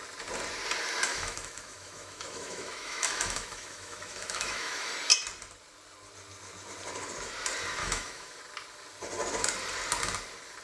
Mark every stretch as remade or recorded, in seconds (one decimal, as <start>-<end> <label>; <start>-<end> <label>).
0.0-1.1 recorded; 1.1-4.9 remade; 4.9-7.8 recorded; 7.8-8.4 remade; 8.4-10.6 recorded